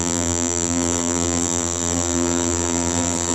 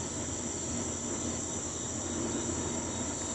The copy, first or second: first